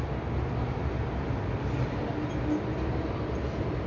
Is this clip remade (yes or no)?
no